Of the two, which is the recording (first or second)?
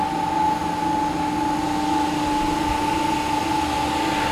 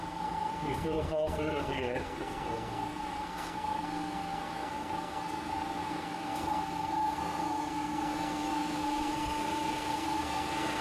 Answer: first